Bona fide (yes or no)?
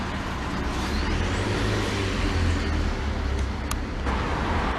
yes